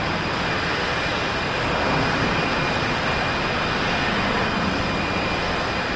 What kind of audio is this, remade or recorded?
recorded